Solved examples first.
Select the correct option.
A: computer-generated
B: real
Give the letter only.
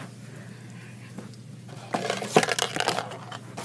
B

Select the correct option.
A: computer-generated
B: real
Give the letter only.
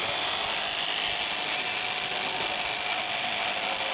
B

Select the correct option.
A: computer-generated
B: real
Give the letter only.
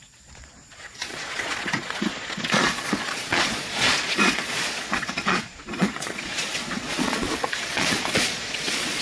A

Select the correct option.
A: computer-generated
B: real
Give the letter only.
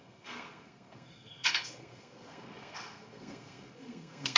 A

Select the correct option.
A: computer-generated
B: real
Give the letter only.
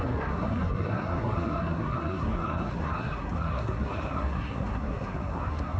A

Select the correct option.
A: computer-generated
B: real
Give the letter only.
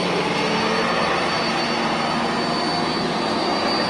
B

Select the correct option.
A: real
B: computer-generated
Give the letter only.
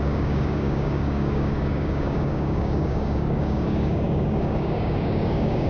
B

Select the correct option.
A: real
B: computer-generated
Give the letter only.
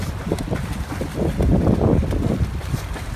A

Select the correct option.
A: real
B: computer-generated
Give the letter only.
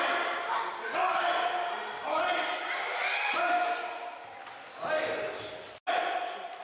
A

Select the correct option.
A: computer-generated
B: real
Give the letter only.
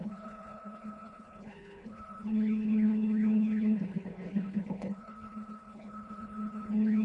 A